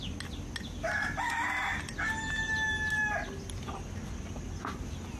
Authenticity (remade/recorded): recorded